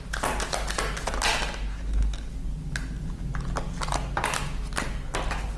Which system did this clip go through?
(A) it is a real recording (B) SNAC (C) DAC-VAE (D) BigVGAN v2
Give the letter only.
A